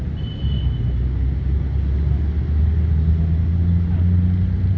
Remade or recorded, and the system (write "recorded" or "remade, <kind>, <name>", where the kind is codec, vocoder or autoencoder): recorded